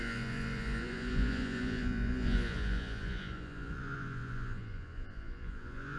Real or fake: fake